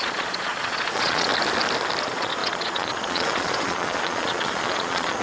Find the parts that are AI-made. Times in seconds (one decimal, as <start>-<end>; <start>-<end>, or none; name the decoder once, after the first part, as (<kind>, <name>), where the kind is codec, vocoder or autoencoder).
0.0-1.3 (vocoder, Vocos); 2.0-5.2